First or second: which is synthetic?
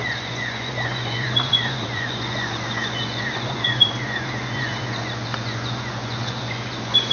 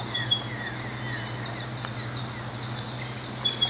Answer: first